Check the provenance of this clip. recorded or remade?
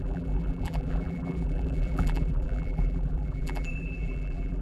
remade